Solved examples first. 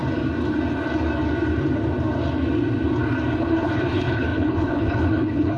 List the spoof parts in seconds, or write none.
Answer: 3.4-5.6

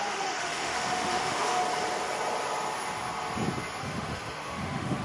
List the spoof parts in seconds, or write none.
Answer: 0.0-1.6; 3.8-5.0

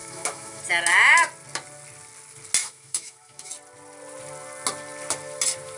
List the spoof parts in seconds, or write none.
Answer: 0.0-0.6; 2.6-3.5